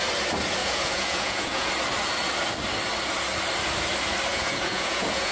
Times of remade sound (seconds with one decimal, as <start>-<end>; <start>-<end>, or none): 0.6-1.7; 4.3-5.3

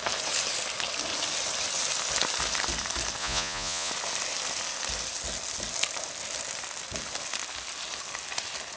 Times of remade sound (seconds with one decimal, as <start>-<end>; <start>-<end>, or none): 3.2-3.9

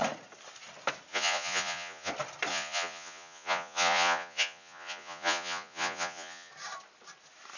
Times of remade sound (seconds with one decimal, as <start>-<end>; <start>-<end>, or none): 1.1-2.1; 2.5-6.5

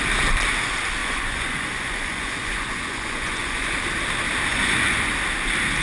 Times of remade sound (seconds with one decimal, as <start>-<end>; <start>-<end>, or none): 1.0-3.8; 4.5-5.1

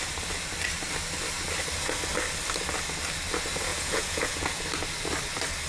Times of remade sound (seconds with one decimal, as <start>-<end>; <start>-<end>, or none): 3.7-4.6

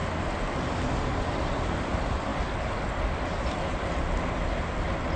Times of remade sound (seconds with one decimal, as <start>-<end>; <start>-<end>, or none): none

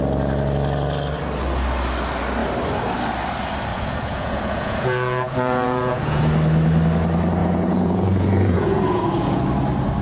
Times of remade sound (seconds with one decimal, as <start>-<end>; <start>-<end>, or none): 3.7-6.2; 7.4-9.4